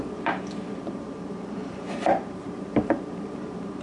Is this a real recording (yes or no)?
no